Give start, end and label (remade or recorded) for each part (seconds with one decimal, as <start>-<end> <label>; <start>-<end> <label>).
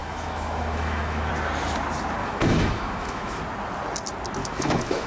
0.0-1.3 remade; 1.3-2.2 recorded; 2.2-3.4 remade; 3.4-4.4 recorded; 4.4-5.1 remade